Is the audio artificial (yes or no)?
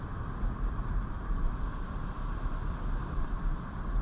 no